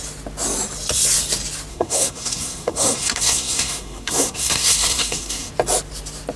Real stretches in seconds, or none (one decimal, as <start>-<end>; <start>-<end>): 0.0-1.7; 5.5-6.4